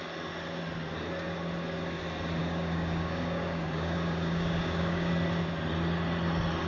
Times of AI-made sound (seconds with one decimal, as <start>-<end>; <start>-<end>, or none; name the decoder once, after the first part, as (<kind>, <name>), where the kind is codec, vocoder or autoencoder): 2.4-5.1 (codec, DAC)